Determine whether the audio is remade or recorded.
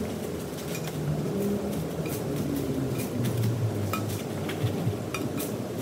remade